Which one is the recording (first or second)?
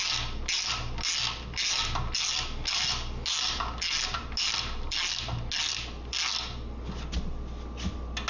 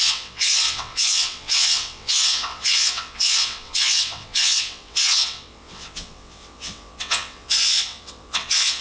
first